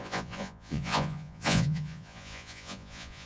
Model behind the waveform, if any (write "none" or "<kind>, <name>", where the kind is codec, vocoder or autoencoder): vocoder, Vocos